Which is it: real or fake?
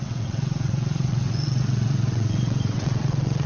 fake